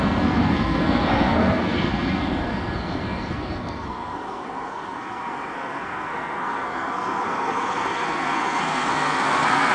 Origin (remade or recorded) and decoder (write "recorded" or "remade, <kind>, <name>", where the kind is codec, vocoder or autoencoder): remade, codec, SNAC